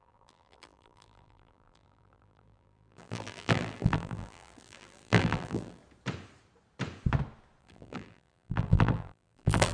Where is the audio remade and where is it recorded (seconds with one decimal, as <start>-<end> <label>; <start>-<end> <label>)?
0.0-5.8 remade; 5.8-7.6 recorded; 7.6-9.7 remade